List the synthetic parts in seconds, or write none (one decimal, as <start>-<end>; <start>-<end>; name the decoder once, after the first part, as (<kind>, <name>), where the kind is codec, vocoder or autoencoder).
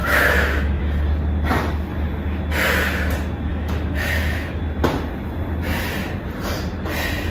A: 0.0-0.8 (autoencoder, DAC-VAE); 3.5-4.6